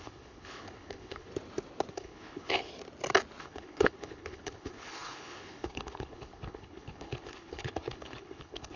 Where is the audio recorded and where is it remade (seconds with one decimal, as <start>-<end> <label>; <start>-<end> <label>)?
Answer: 0.0-1.3 remade; 1.3-1.9 recorded; 1.9-2.7 remade; 2.7-3.4 recorded; 3.4-8.8 remade